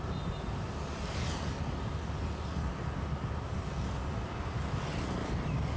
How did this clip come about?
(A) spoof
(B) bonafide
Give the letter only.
B